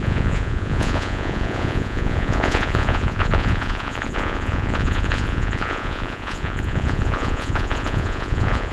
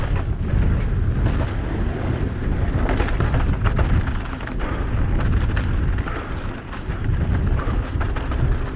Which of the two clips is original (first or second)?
second